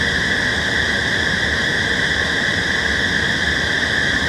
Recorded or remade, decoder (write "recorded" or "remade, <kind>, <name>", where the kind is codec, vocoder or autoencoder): recorded